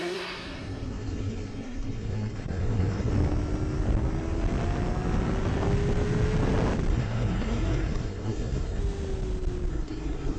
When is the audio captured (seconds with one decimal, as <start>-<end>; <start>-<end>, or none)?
3.1-6.9; 8.8-9.7